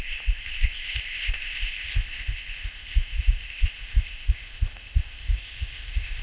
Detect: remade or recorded remade